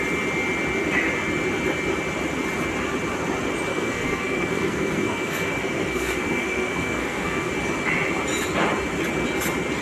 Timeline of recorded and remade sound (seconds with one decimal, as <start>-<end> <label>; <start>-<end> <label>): 0.0-3.7 recorded; 3.7-7.5 remade; 7.5-9.8 recorded